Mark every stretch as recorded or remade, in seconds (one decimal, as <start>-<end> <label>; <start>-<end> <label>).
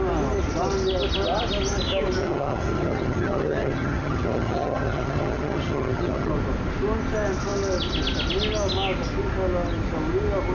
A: 0.0-2.2 recorded; 2.2-6.3 remade; 6.3-10.5 recorded